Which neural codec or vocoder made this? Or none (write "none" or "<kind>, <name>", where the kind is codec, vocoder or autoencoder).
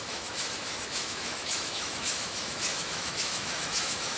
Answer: autoencoder, DAC-VAE